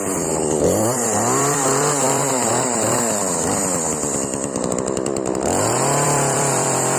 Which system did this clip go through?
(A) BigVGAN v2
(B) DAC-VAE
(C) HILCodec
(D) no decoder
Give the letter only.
A